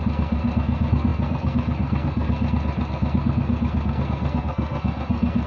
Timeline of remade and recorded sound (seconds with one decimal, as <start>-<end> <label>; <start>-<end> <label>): 0.0-5.5 remade